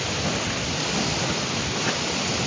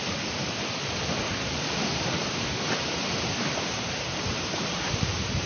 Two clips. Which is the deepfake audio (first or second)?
second